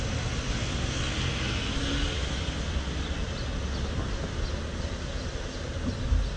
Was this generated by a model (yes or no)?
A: no